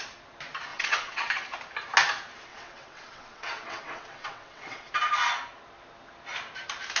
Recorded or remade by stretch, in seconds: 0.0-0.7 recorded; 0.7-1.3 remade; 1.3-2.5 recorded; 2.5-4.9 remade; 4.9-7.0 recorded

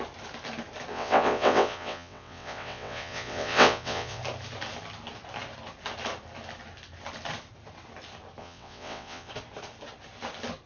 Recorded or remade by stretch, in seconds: 0.0-0.9 recorded; 0.9-4.2 remade; 4.2-8.4 recorded; 8.4-9.3 remade; 9.3-10.7 recorded

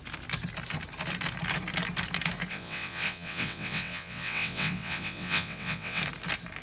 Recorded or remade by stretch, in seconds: 0.0-2.5 recorded; 2.5-6.0 remade; 6.0-6.6 recorded

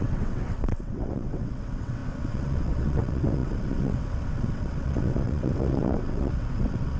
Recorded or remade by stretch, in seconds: 0.0-7.0 remade

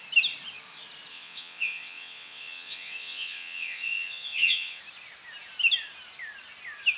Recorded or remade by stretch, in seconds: 0.0-1.1 recorded; 1.1-4.8 remade; 4.8-7.0 recorded

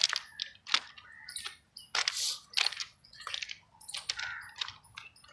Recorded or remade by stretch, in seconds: 0.0-2.8 recorded; 2.8-3.3 remade; 3.3-5.3 recorded

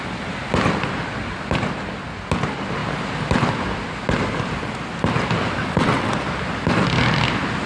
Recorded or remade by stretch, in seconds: 0.0-5.6 recorded; 5.6-6.1 remade; 6.1-7.7 recorded